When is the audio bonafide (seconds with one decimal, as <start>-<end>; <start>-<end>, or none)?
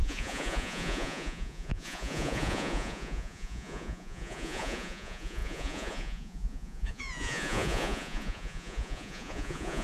none